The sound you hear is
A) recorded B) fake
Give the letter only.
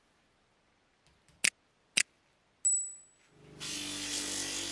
A